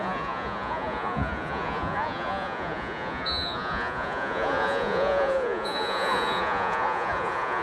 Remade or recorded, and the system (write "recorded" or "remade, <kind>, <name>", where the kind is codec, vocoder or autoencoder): remade, vocoder, Vocos